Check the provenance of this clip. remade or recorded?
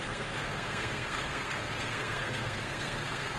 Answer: remade